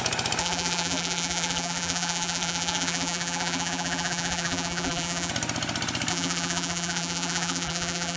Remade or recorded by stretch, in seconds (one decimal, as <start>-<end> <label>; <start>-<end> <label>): 0.0-0.4 recorded; 0.4-5.3 remade; 5.3-6.1 recorded; 6.1-8.2 remade